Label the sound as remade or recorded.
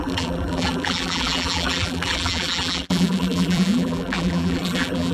remade